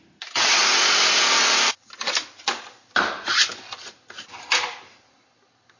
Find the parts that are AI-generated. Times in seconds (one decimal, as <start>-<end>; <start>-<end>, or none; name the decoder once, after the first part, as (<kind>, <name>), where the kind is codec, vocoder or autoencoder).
none